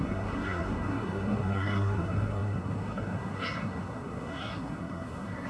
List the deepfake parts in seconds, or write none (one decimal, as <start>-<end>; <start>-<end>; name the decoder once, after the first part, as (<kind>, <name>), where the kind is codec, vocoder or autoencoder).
0.0-5.5 (codec, SNAC)

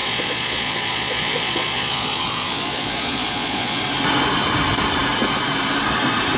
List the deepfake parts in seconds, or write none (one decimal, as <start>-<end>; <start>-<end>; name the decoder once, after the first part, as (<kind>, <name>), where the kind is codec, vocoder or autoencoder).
0.0-3.8 (vocoder, Vocos)

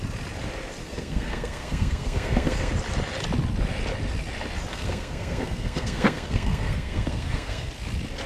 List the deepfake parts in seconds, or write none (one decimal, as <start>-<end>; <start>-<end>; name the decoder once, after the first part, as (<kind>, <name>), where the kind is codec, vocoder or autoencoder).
0.8-2.7 (codec, SNAC); 4.7-7.7

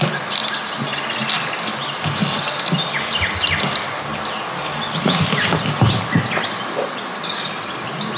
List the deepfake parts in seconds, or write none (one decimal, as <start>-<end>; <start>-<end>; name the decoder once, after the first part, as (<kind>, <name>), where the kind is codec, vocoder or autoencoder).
none

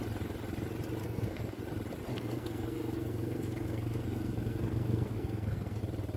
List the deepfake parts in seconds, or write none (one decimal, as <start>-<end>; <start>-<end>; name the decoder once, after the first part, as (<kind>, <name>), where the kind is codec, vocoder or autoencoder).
1.0-1.6 (codec, SNAC); 2.1-5.8

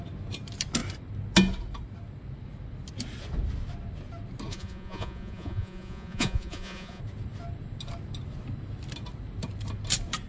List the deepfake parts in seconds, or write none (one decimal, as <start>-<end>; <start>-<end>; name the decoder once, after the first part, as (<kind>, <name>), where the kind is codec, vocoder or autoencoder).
4.5-7.0 (vocoder, Vocos)